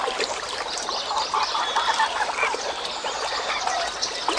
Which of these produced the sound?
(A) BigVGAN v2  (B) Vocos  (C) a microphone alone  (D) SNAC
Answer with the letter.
C